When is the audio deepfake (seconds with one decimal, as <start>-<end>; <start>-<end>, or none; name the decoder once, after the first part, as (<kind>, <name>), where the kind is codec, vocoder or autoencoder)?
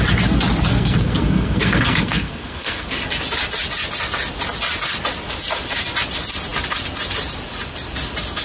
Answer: 0.6-3.0 (codec, SNAC)